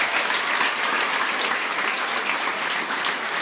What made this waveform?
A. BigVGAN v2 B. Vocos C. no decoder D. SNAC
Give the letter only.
C